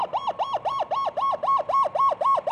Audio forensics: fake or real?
real